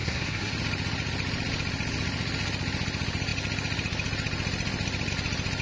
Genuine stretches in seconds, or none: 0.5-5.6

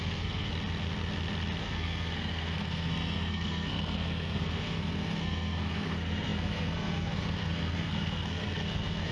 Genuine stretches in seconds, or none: 0.5-1.6

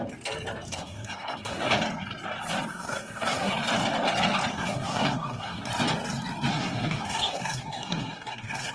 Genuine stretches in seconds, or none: 0.0-0.7; 1.7-2.7; 3.5-4.5; 5.7-6.5

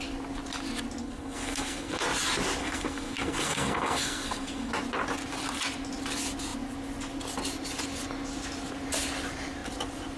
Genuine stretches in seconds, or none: 0.0-1.0; 2.0-2.6; 4.7-10.2

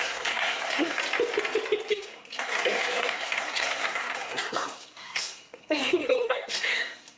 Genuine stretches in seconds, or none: 1.0-1.9